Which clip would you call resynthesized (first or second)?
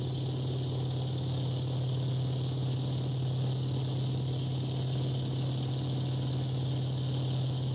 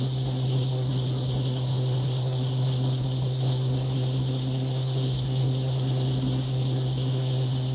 second